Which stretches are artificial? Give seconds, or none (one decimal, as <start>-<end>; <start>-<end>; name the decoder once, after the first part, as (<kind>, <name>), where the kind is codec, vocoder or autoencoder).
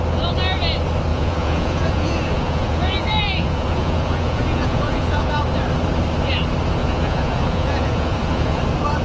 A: 1.1-5.3 (vocoder, Vocos); 6.8-8.6